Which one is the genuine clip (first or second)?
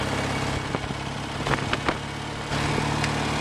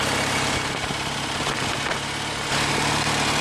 first